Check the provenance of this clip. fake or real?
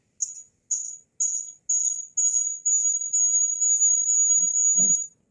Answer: real